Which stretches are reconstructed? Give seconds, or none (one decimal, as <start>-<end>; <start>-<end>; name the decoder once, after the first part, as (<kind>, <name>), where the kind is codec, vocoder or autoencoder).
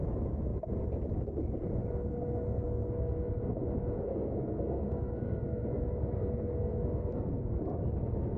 2.1-3.3 (codec, SNAC); 4.1-7.6